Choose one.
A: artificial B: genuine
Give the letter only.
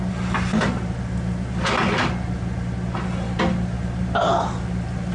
B